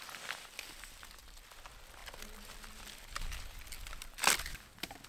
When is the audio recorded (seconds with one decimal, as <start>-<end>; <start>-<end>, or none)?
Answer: 0.0-5.1